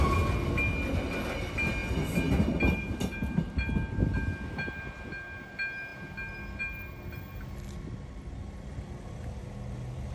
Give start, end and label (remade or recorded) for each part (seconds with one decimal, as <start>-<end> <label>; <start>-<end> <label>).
0.0-10.1 recorded